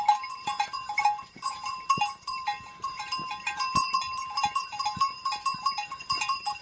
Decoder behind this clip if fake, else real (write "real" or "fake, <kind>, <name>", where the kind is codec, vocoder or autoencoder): fake, vocoder, BigVGAN v2